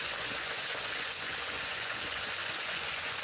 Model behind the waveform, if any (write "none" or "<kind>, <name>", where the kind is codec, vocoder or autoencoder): vocoder, Vocos